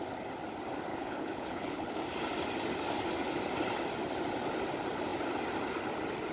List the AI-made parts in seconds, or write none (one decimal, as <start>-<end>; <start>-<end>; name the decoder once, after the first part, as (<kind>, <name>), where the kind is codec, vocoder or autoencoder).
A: 0.9-2.0 (codec, HILCodec)